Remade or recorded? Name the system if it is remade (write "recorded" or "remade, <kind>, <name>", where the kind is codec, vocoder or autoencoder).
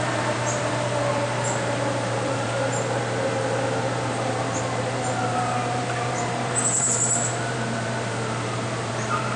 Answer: remade, vocoder, BigVGAN v2